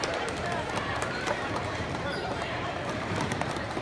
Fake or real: fake